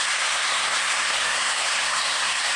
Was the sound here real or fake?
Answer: fake